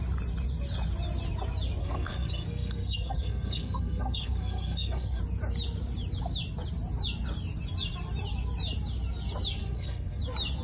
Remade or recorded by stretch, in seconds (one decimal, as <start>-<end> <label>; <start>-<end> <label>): 0.0-1.8 recorded; 1.8-5.2 remade; 5.2-9.6 recorded; 9.6-10.2 remade; 10.2-10.6 recorded